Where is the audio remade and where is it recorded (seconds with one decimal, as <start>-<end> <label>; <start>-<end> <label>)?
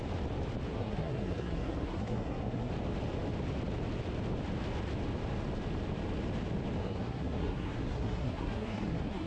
0.0-0.7 recorded; 0.7-2.7 remade; 2.7-6.8 recorded; 6.8-9.3 remade